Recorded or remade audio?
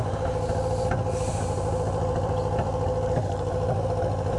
recorded